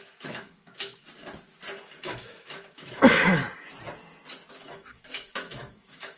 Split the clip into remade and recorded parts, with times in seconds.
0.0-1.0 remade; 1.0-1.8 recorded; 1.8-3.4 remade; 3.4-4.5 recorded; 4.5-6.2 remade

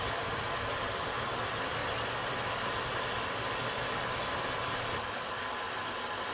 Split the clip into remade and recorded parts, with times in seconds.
0.0-6.3 recorded

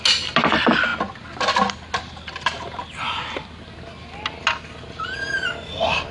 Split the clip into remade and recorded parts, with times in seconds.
0.0-6.1 recorded